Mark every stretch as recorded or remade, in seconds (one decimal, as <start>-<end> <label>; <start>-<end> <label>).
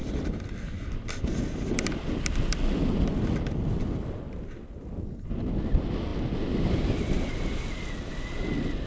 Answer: 0.0-8.9 recorded